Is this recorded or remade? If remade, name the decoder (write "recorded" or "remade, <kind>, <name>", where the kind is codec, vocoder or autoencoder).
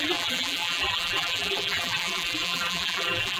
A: remade, vocoder, BigVGAN v2